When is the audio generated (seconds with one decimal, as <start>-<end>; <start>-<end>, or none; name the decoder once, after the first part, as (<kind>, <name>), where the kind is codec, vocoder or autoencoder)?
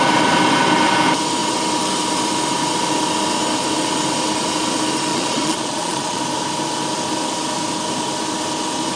5.1-6.2 (vocoder, Vocos)